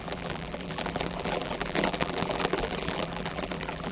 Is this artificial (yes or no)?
yes